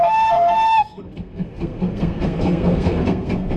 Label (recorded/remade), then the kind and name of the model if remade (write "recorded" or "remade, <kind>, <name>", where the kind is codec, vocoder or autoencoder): remade, codec, SNAC